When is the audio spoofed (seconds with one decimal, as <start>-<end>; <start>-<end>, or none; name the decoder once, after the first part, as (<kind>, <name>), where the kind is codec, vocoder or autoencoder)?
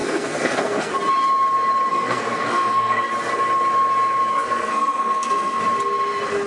0.0-0.9 (codec, SNAC); 1.9-3.1; 4.3-5.6